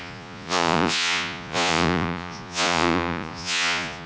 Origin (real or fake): fake